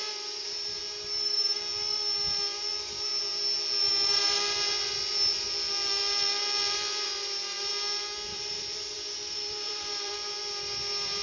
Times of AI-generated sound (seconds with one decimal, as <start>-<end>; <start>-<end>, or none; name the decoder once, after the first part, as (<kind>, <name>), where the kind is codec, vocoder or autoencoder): 0.0-0.8 (vocoder, BigVGAN v2); 8.3-10.1